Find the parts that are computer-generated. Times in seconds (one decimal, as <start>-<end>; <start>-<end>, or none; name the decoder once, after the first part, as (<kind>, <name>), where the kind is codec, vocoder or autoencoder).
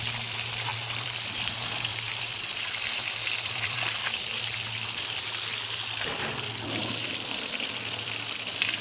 0.0-8.8 (vocoder, BigVGAN v2)